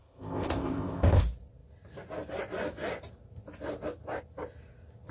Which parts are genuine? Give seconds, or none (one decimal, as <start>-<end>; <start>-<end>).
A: 1.2-5.1